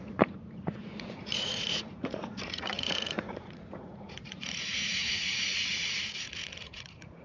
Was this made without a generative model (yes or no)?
no